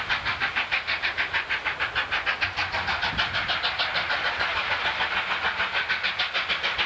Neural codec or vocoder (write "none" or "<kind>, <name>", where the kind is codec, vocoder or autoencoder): none